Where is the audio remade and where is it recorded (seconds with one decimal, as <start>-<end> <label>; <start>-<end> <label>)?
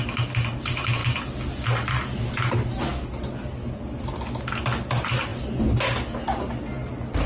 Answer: 0.0-7.3 recorded